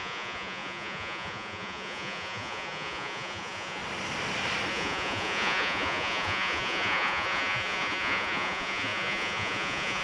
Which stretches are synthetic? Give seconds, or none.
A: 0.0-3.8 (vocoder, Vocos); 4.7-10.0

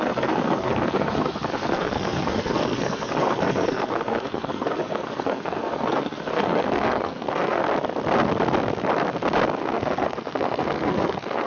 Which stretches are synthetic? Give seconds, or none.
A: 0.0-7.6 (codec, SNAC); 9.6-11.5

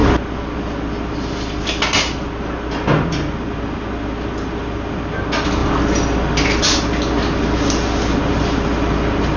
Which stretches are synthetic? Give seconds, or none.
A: none

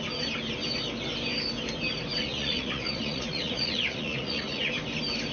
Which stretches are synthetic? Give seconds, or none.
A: 2.2-4.7 (vocoder, Vocos)